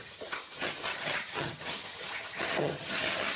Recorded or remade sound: remade